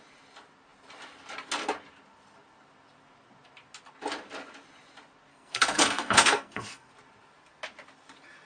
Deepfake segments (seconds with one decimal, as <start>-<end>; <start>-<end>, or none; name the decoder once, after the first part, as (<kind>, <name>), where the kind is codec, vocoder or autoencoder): 5.3-6.9 (codec, SNAC)